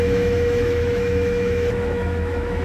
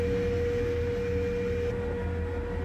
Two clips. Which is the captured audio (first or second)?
second